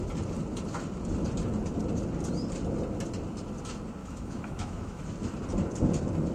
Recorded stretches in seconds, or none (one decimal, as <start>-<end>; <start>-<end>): 0.0-4.0; 5.0-6.3